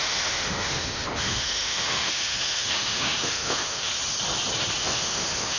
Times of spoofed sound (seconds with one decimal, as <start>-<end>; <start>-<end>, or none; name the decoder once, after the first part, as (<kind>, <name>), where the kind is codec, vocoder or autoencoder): 0.0-3.9 (autoencoder, DAC-VAE); 4.8-5.6